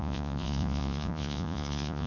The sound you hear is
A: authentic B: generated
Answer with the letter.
B